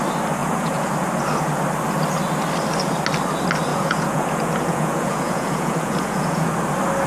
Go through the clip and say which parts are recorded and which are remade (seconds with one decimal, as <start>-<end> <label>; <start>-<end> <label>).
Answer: 0.0-0.4 recorded; 0.4-0.9 remade; 0.9-3.7 recorded; 3.7-6.5 remade; 6.5-7.1 recorded